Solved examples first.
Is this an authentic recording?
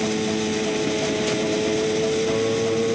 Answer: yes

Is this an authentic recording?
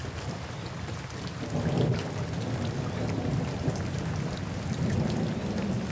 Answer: yes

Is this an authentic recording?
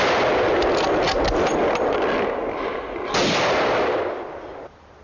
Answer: yes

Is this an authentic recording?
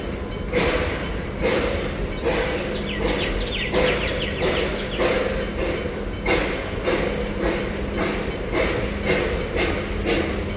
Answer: yes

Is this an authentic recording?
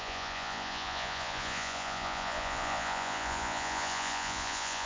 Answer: no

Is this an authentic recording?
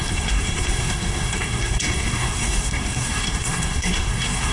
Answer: no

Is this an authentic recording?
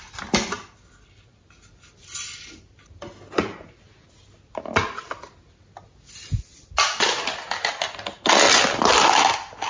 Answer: yes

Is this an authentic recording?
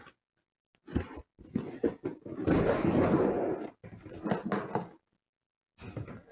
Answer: yes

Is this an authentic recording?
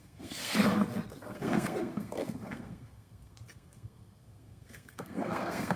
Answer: no